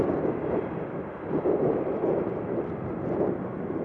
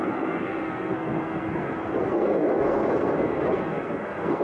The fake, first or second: second